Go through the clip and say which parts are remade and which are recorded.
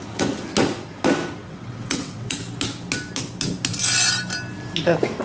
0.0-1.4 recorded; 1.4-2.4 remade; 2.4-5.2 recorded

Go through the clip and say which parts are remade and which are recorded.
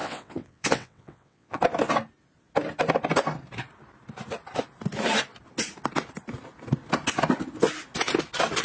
0.0-1.6 remade; 1.6-8.6 recorded